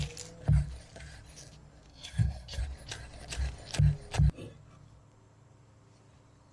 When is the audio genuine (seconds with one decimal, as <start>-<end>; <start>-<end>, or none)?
0.0-1.9; 2.6-6.5